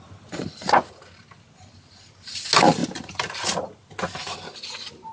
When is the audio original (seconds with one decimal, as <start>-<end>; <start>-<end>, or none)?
0.0-2.8; 3.8-5.1